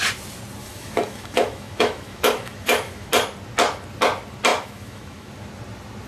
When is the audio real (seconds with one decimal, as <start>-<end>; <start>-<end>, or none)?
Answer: 0.0-0.6; 3.1-4.5; 5.3-6.1